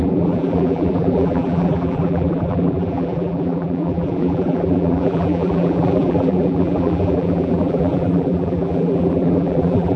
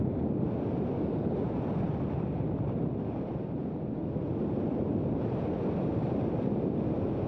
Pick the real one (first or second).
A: second